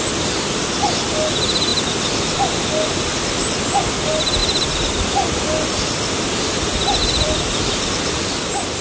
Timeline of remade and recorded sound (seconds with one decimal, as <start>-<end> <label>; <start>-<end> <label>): 0.0-7.0 recorded; 7.0-7.8 remade; 7.8-8.8 recorded